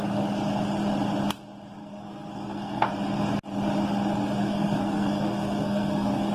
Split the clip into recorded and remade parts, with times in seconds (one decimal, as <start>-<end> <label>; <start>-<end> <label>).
0.0-1.8 recorded; 1.8-2.9 remade; 2.9-4.4 recorded; 4.4-6.3 remade